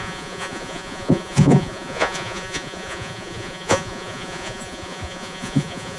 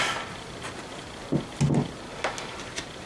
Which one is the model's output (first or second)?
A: first